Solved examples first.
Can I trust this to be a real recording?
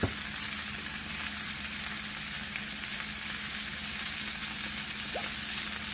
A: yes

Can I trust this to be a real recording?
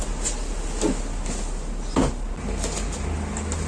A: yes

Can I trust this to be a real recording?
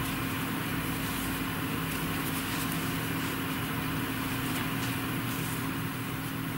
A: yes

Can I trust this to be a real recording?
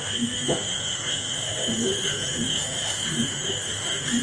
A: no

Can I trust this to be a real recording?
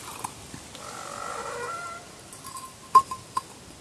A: yes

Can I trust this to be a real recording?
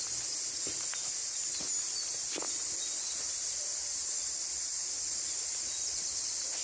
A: yes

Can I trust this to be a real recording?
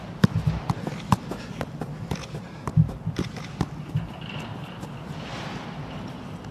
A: yes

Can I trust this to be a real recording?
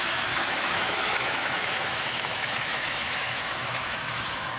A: no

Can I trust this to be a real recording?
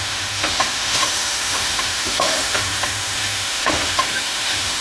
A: no